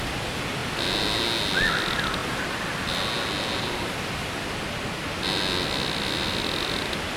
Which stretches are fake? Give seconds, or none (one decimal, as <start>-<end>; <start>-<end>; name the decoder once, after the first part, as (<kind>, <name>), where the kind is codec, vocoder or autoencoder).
none